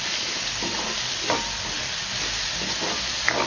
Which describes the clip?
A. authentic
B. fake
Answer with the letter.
A